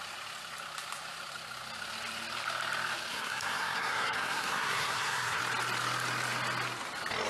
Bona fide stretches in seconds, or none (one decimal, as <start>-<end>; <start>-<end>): 0.0-3.1; 5.4-7.3